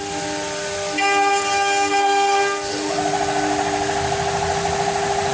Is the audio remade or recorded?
recorded